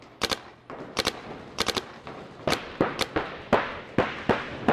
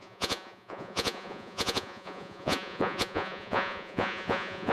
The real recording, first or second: first